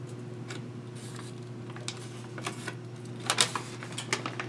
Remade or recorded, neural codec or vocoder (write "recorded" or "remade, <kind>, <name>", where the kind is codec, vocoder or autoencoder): recorded